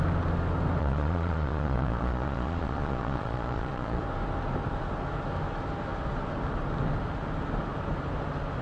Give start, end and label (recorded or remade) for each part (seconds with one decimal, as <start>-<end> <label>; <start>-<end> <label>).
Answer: 0.0-0.8 recorded; 0.8-4.0 remade; 4.0-8.6 recorded